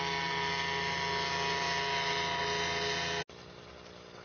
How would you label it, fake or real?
real